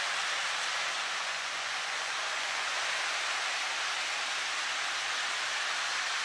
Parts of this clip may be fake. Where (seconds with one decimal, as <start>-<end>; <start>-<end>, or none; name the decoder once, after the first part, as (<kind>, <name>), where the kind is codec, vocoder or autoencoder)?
1.0-2.8 (vocoder, Vocos)